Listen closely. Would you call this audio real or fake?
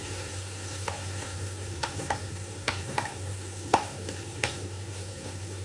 fake